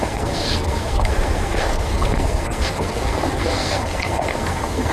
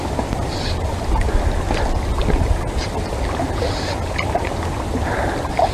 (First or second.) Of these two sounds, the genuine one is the second